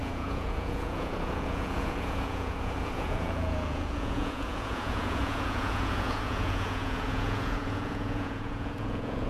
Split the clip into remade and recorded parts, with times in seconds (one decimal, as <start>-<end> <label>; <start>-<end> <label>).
0.0-9.3 remade